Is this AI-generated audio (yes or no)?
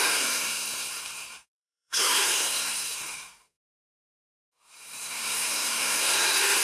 yes